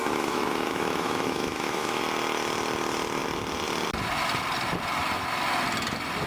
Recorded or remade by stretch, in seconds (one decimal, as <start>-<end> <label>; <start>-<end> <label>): 0.0-2.0 remade; 2.0-6.3 recorded